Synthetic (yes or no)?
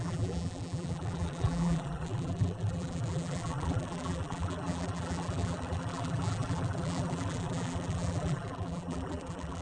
yes